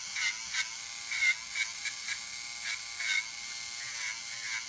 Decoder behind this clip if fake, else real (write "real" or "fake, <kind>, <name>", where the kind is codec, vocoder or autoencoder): real